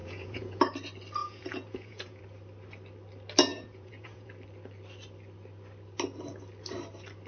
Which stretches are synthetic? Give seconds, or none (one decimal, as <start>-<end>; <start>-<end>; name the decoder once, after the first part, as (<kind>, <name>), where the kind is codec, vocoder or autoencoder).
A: 0.0-0.6 (vocoder, Vocos); 1.2-2.2; 3.5-4.3